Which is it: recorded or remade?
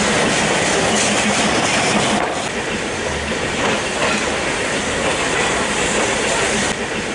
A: recorded